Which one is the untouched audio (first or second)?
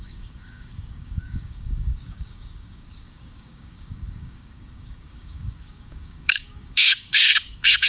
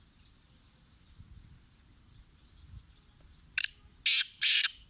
second